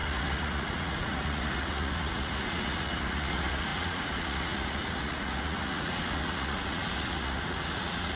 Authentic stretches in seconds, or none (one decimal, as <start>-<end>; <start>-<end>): none